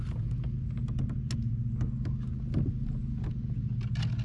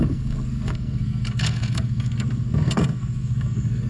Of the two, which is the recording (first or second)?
first